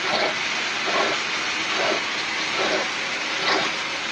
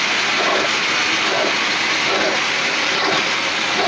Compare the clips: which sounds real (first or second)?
first